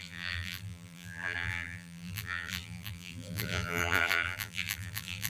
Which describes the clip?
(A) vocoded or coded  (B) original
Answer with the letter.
A